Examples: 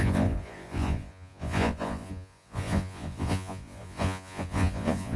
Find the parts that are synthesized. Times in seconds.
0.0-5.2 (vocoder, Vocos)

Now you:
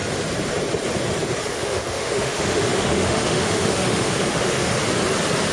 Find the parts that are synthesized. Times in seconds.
1.5-4.8 (autoencoder, DAC-VAE)

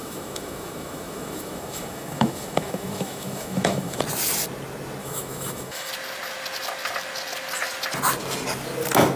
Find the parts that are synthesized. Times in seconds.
0.0-4.0 (autoencoder, DAC-VAE); 5.0-5.9

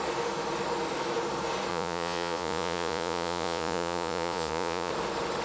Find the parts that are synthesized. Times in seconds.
1.7-4.9 (vocoder, Vocos)

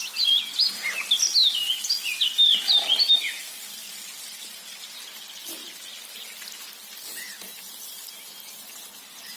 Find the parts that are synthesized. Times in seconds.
none

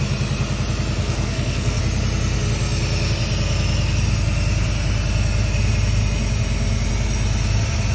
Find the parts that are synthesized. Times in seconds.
1.0-1.8 (codec, SNAC)